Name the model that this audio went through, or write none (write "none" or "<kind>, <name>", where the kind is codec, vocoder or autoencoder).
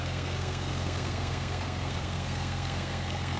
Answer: codec, SNAC